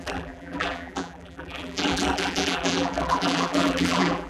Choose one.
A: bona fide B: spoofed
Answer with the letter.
B